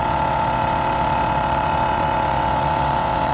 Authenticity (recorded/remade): remade